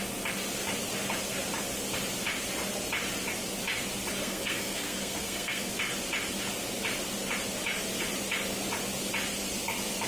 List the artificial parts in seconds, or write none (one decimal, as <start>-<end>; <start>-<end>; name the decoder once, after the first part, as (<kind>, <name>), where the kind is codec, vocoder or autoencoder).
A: 4.2-5.7 (codec, SNAC)